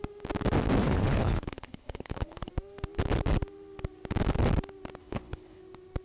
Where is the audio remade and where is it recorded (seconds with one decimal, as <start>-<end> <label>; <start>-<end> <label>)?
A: 0.0-0.8 recorded; 0.8-2.5 remade; 2.5-5.0 recorded; 5.0-5.6 remade; 5.6-6.0 recorded